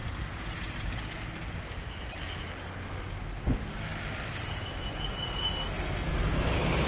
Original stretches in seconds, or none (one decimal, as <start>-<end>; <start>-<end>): 0.0-5.7; 6.2-6.9